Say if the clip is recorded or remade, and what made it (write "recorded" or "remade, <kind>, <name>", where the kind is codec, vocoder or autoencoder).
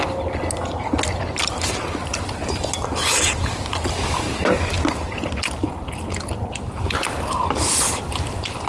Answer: recorded